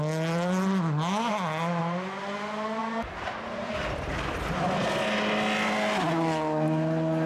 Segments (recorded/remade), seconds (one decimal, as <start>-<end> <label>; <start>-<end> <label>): 0.0-7.3 recorded